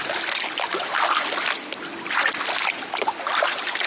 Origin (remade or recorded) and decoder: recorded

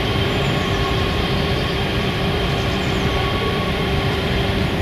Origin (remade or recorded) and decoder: remade, vocoder, BigVGAN v2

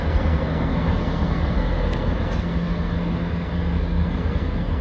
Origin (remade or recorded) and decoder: remade, codec, SNAC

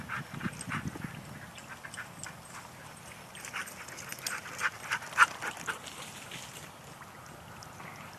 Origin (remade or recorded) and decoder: recorded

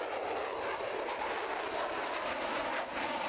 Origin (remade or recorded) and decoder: recorded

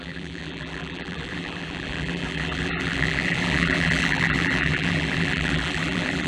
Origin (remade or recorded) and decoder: remade, vocoder, BigVGAN v2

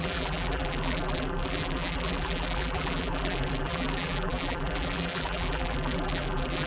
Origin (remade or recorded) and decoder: remade, vocoder, BigVGAN v2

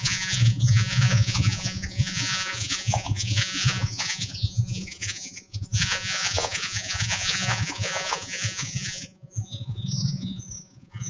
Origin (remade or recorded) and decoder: remade, vocoder, Vocos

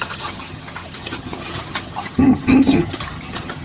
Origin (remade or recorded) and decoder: remade, vocoder, HiFi-GAN